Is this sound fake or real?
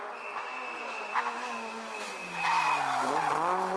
real